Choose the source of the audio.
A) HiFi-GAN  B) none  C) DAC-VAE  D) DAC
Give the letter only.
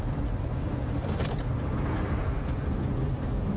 B